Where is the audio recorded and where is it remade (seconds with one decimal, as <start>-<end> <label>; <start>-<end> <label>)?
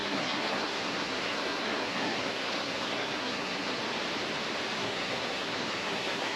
0.0-3.8 remade; 3.8-4.8 recorded; 4.8-6.4 remade